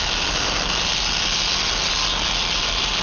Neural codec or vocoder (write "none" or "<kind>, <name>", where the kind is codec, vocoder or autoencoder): none